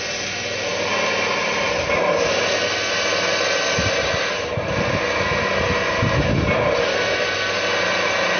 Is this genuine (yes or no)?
yes